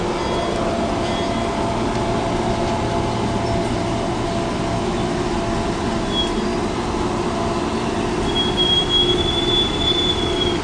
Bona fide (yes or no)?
yes